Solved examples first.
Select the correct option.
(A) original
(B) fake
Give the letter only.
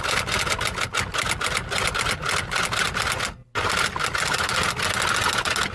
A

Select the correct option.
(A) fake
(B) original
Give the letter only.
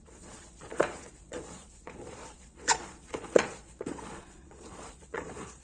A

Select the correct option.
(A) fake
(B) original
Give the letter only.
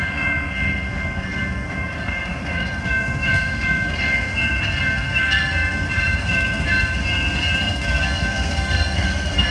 A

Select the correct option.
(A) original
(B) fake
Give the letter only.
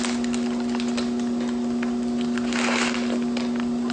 A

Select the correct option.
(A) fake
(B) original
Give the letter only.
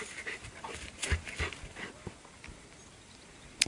A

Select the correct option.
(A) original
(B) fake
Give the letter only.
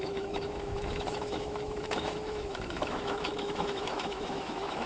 B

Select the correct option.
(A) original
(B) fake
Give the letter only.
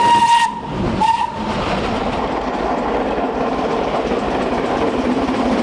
A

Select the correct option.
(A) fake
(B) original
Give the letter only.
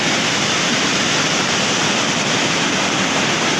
B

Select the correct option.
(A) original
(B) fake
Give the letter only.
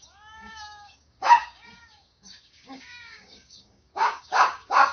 B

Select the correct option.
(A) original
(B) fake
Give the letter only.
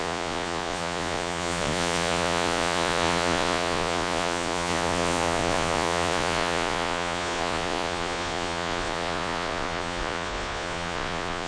B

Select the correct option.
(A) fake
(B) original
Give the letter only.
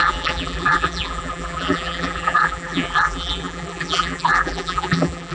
A